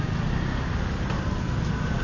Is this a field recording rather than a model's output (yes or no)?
yes